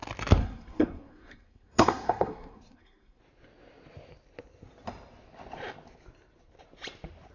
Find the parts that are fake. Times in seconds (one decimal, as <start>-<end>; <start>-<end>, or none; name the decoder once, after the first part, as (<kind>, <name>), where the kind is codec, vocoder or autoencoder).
0.4-3.2 (codec, SNAC)